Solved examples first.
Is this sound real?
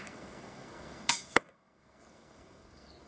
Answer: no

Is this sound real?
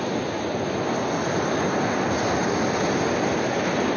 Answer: yes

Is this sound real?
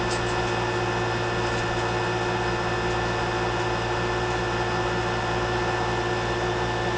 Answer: yes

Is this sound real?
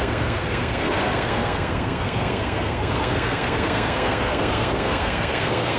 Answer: no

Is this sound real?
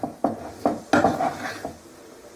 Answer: yes